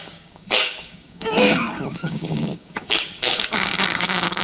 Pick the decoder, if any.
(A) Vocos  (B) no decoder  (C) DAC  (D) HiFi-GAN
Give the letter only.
C